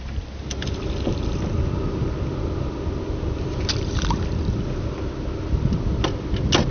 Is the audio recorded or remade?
recorded